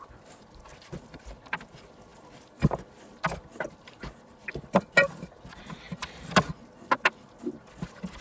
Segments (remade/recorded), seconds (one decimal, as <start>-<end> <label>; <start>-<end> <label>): 0.0-8.2 recorded